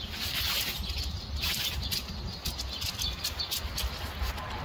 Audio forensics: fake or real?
real